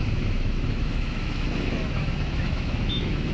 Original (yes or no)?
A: no